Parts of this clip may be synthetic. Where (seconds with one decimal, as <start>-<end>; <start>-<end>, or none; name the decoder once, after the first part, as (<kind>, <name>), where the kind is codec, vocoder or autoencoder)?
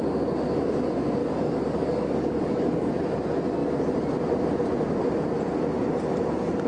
1.2-2.9 (codec, DAC)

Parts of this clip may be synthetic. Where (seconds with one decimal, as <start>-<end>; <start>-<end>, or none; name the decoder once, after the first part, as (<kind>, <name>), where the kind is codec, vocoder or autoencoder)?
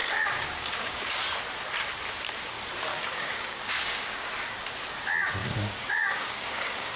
0.0-1.1 (codec, DAC); 2.9-4.3; 5.4-7.0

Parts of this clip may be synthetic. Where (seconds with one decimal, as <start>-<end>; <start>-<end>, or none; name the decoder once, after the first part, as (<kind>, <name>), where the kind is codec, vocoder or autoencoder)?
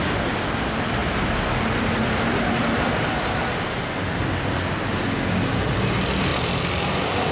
none